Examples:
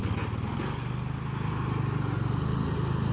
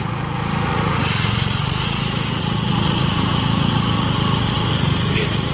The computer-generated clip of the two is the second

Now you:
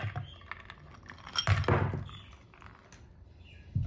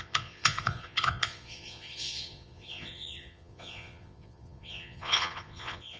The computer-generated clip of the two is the second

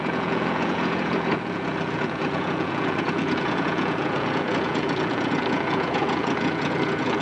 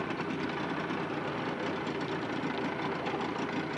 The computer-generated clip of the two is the first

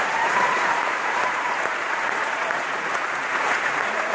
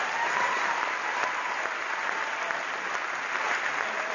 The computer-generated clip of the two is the first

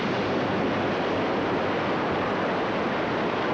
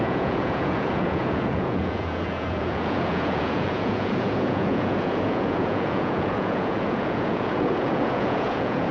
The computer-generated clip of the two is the second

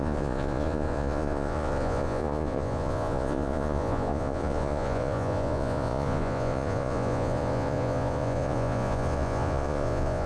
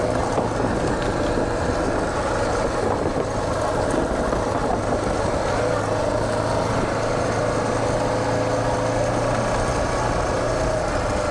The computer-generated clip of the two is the first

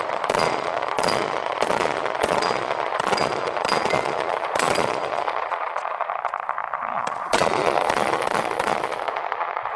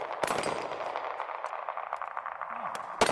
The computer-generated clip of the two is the first